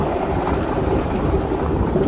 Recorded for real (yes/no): no